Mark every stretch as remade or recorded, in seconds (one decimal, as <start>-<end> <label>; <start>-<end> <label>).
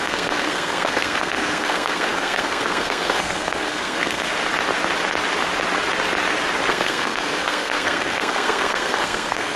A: 0.0-4.3 remade; 4.3-6.7 recorded; 6.7-9.6 remade